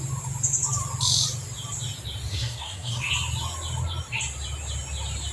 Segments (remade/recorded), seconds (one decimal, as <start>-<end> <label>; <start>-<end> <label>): 0.0-2.3 recorded; 2.3-3.1 remade; 3.1-5.3 recorded